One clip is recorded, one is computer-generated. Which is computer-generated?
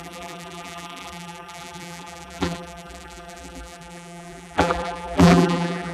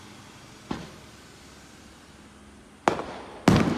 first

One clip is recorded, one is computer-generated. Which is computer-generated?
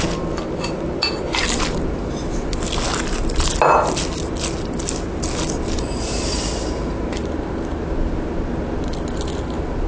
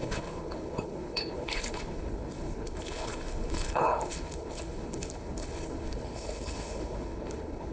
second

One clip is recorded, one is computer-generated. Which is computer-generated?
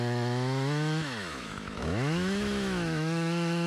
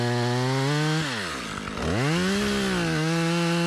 first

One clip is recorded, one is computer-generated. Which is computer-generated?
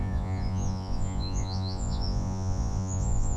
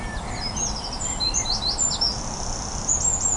first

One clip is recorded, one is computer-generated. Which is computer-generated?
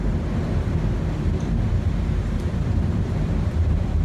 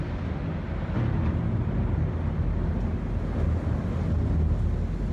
first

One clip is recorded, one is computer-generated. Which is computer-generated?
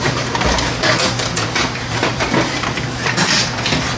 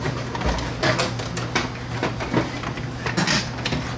first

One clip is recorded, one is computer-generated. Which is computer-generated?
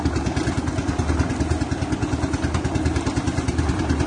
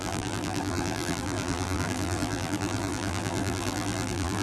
second